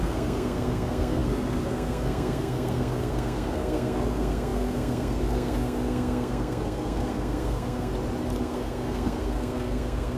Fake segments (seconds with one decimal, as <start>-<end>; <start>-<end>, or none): 0.0-7.9; 8.4-10.2